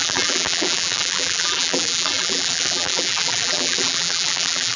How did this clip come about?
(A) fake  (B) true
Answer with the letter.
A